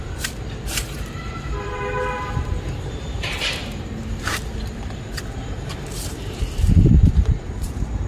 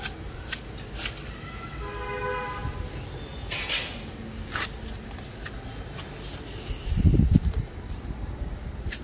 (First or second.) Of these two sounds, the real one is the second